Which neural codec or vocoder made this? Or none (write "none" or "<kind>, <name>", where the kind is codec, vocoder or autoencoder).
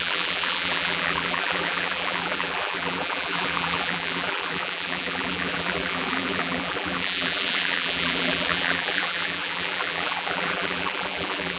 vocoder, BigVGAN v2